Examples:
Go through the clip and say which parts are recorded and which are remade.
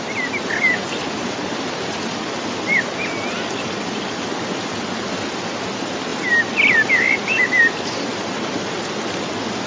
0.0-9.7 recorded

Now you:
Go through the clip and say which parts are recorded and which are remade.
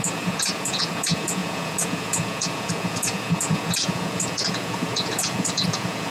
0.0-6.1 remade